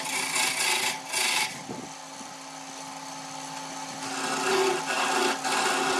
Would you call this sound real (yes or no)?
yes